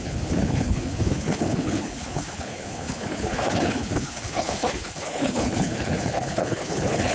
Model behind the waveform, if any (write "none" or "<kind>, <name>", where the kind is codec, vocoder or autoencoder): codec, HILCodec